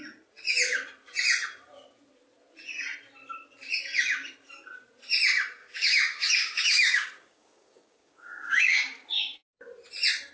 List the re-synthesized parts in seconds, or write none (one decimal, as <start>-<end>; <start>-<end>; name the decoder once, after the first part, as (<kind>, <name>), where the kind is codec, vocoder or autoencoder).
5.6-9.1 (codec, DAC)